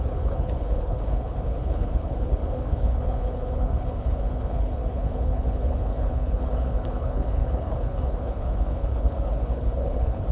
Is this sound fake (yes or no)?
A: yes